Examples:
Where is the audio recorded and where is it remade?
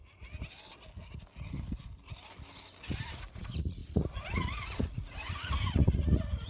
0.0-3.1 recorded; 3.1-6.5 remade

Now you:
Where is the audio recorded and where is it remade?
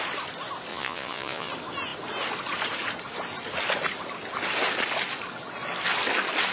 0.0-0.7 recorded; 0.7-1.5 remade; 1.5-6.5 recorded